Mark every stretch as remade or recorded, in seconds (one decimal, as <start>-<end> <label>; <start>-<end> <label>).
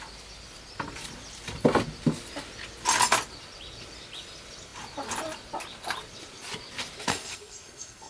0.0-7.1 recorded; 7.1-8.1 remade